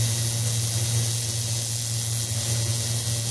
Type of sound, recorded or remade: recorded